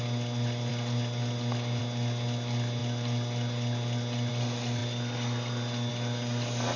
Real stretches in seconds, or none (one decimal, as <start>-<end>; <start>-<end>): 0.0-6.8